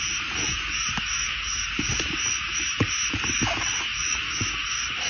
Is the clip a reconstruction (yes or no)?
no